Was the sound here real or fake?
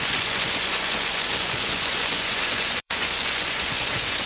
fake